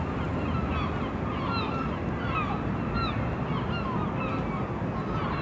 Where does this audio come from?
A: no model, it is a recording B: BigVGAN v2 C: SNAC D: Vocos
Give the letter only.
A